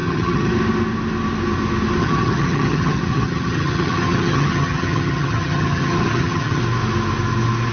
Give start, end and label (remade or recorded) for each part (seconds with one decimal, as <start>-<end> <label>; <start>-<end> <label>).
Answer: 0.0-0.5 remade; 0.5-2.0 recorded; 2.0-6.6 remade; 6.6-7.7 recorded